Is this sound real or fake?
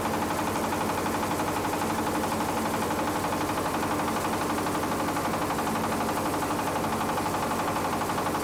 real